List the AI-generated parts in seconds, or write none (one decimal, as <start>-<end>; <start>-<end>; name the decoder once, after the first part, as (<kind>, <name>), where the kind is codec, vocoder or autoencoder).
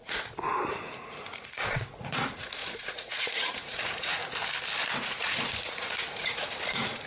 0.0-4.2 (vocoder, Vocos); 5.0-7.1